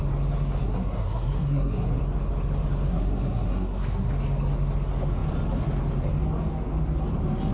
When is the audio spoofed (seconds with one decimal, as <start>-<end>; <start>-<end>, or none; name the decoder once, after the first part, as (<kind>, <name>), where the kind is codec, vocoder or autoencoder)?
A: 0.6-2.0 (codec, SNAC); 2.9-4.1